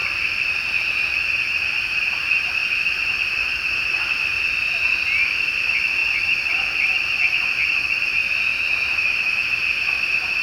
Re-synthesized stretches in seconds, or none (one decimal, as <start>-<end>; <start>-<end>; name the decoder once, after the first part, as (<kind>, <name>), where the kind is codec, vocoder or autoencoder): 0.0-0.6 (vocoder, BigVGAN v2); 8.5-9.3